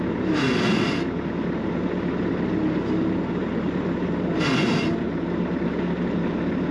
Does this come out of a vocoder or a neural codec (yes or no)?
no